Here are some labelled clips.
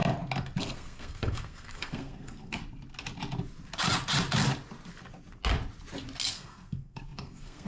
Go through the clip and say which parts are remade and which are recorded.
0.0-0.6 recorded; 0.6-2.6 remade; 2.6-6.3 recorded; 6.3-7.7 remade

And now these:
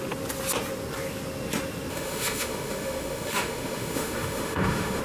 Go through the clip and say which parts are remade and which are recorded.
0.0-1.9 recorded; 1.9-5.0 remade

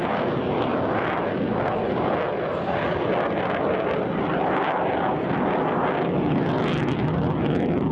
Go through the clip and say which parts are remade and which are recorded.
0.0-7.9 recorded

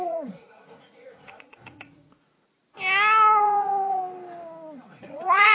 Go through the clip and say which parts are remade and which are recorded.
0.0-2.6 remade; 2.6-3.4 recorded; 3.4-4.0 remade; 4.0-4.9 recorded; 4.9-5.5 remade

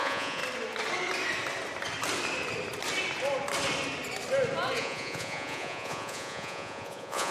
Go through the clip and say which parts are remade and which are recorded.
0.0-0.4 remade; 0.4-4.8 recorded; 4.8-7.3 remade

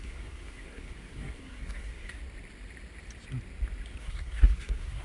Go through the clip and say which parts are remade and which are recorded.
0.0-2.2 remade; 2.2-4.0 recorded; 4.0-5.0 remade

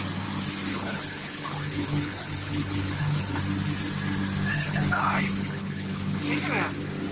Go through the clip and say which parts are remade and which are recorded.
0.0-0.7 recorded; 0.7-3.4 remade; 3.4-4.5 recorded; 4.5-6.2 remade; 6.2-7.1 recorded

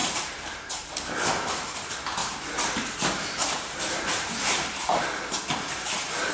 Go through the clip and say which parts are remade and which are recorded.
0.0-0.9 remade; 0.9-2.2 recorded; 2.2-5.0 remade; 5.0-6.3 recorded